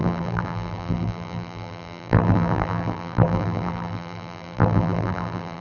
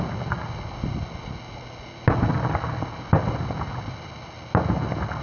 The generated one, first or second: first